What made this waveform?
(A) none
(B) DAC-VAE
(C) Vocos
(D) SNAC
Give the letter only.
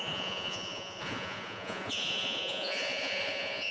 C